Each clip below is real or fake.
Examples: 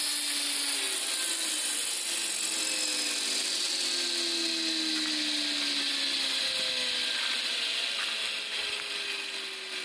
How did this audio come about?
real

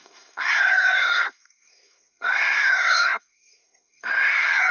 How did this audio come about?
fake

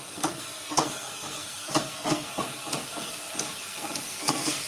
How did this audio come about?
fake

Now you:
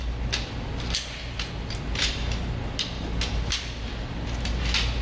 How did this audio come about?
real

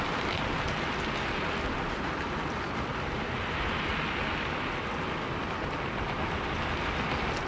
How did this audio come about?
real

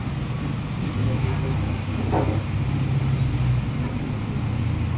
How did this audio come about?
real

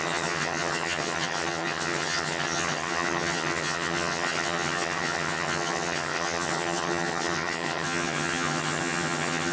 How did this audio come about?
fake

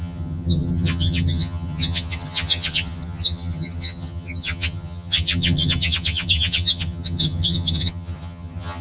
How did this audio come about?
fake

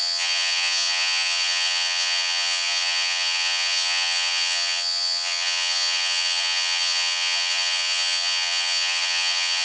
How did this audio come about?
fake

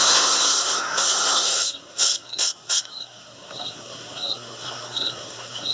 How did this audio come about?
fake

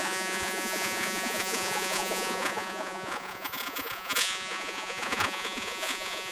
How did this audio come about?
fake